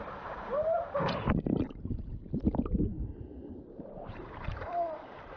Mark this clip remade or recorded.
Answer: remade